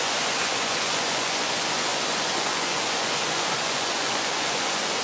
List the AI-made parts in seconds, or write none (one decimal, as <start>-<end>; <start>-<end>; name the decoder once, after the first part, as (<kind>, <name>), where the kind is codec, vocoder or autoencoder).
0.0-5.0 (vocoder, Vocos)